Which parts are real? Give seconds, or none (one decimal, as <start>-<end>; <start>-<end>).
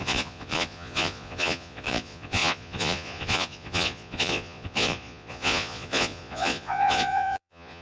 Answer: none